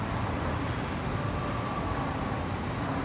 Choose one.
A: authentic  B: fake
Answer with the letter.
A